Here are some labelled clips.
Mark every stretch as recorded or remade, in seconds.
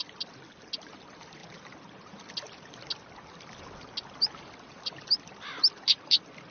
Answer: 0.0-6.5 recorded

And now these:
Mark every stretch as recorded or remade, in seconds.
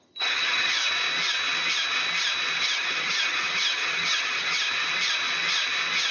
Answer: 0.0-0.8 remade; 0.8-2.6 recorded; 2.6-4.7 remade; 4.7-6.1 recorded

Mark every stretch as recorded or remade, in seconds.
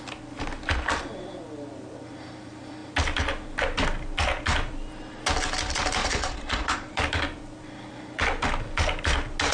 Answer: 0.0-6.0 recorded; 6.0-7.0 remade; 7.0-9.5 recorded